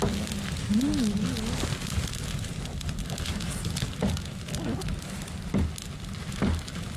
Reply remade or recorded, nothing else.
recorded